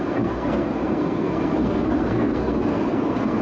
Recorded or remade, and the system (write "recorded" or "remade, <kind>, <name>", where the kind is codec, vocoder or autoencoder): remade, codec, SNAC